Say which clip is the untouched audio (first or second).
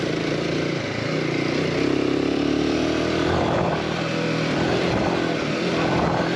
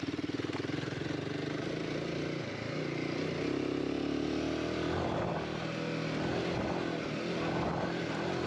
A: second